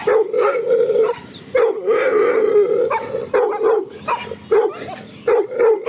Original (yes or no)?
yes